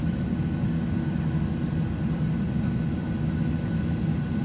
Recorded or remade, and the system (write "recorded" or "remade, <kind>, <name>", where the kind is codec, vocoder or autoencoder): recorded